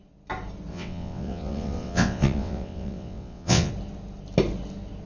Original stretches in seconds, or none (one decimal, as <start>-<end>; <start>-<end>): 0.0-0.7; 3.7-5.1